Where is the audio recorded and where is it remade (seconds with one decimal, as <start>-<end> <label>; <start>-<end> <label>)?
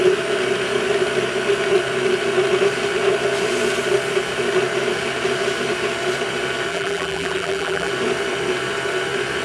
0.0-6.7 recorded; 6.7-7.9 remade; 7.9-9.4 recorded